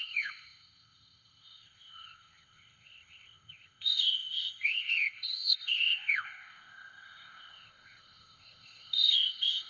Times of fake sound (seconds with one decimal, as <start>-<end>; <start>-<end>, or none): 0.0-9.7